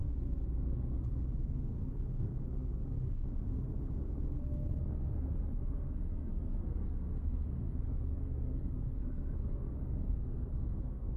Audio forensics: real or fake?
fake